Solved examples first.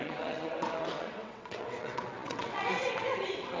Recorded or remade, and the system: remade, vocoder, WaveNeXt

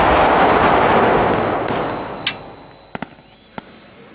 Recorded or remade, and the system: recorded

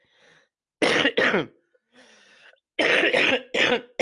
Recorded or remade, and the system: recorded